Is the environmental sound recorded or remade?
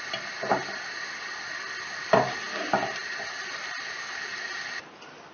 recorded